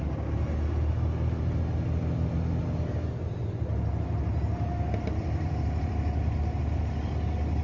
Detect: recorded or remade recorded